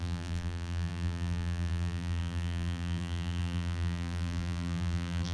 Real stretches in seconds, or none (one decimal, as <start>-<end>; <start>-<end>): none